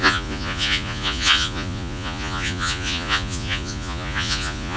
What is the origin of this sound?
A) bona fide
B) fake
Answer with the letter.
B